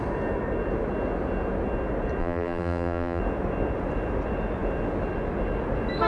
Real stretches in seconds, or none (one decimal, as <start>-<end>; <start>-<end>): 0.0-2.2; 3.2-6.1